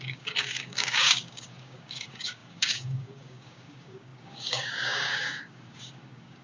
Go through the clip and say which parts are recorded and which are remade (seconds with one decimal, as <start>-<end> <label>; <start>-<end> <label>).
0.0-6.4 remade